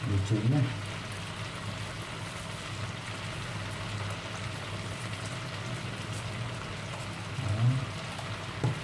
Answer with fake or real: real